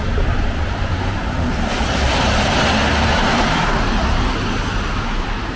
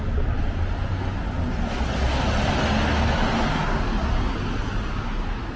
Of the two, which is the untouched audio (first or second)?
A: second